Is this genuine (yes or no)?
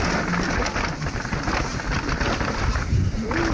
yes